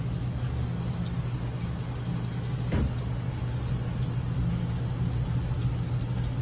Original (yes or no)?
yes